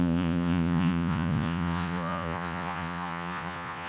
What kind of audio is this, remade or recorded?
remade